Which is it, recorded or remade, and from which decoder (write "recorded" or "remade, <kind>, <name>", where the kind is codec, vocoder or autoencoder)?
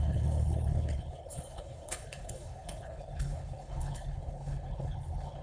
remade, codec, HILCodec